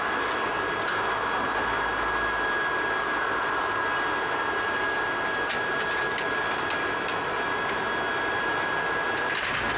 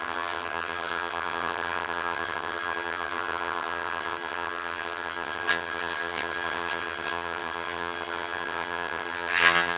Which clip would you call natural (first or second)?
first